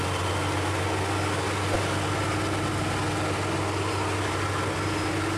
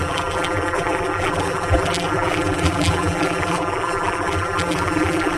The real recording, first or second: first